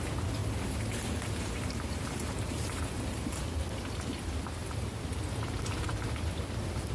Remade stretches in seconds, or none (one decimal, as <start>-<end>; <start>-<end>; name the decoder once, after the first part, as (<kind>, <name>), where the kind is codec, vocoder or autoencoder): 0.4-3.7 (vocoder, BigVGAN v2); 4.6-5.1